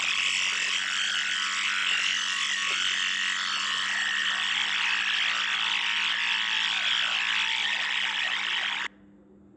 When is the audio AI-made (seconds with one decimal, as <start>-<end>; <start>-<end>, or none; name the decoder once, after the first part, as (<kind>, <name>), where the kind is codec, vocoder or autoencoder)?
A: none

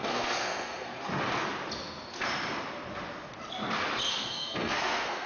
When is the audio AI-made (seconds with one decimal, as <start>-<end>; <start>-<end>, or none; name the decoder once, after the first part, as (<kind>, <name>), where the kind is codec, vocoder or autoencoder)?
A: 0.0-0.9 (codec, SNAC); 4.1-5.3